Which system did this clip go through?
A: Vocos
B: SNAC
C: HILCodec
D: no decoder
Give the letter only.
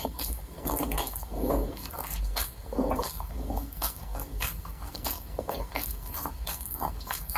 B